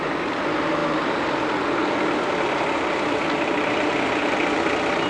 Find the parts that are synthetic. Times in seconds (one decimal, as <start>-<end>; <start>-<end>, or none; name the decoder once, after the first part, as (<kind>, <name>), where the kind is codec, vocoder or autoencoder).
none